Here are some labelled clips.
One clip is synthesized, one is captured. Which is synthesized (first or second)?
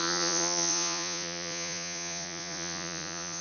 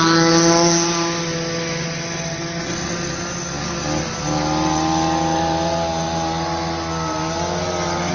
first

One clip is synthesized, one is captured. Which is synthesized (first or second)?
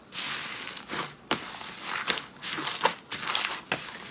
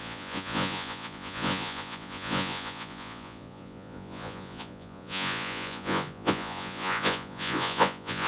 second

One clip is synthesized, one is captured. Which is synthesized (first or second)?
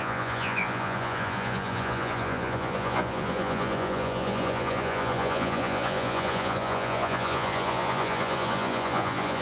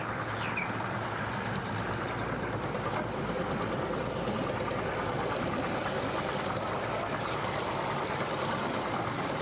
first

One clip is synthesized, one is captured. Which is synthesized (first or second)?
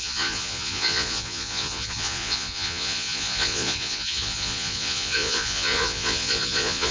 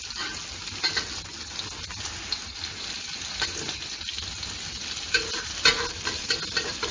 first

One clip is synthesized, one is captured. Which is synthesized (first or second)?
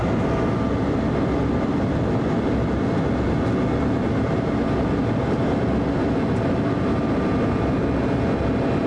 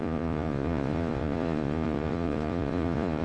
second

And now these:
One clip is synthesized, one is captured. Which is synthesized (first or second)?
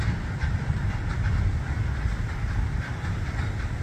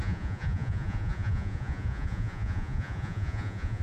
second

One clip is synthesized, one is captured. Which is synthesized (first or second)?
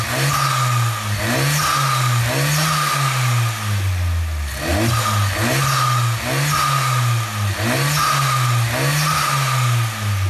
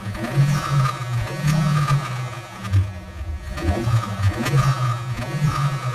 second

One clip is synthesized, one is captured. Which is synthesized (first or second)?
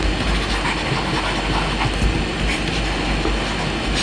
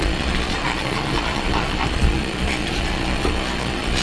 second